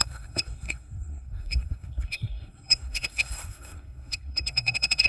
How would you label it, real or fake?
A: fake